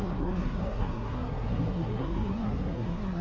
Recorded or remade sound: remade